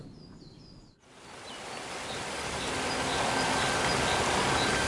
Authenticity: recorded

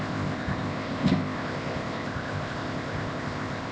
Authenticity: remade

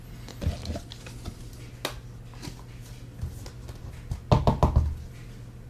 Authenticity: recorded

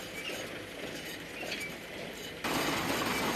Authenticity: recorded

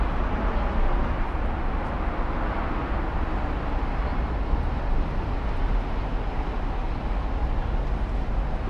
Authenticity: recorded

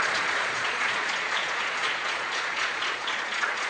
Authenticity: remade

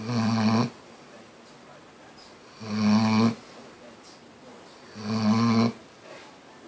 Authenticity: recorded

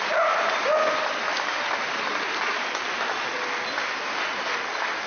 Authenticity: recorded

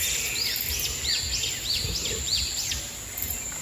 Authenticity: recorded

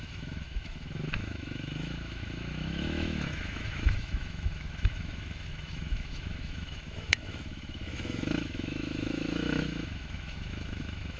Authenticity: remade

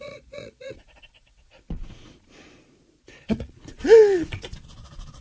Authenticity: remade